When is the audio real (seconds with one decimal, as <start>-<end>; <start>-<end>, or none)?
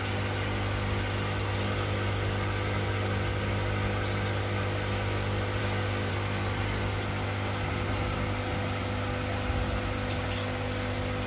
0.0-5.6; 6.1-11.3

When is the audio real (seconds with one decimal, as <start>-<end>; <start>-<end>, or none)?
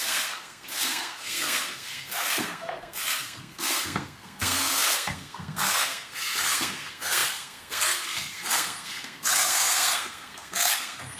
none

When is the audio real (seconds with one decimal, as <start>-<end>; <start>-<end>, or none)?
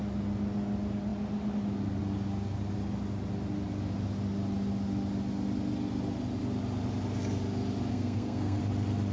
0.0-7.9; 8.6-9.1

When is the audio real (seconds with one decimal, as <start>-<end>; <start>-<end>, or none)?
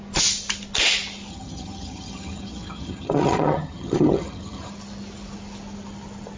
0.0-1.3; 4.7-6.4